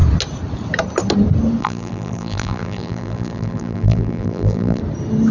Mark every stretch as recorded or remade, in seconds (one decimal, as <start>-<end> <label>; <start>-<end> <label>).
0.0-1.6 recorded; 1.6-4.8 remade; 4.8-5.3 recorded